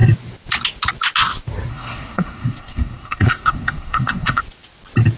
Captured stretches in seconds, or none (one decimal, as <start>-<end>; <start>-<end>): 0.0-1.7; 4.4-5.2